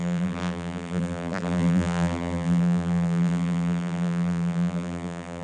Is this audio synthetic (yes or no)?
yes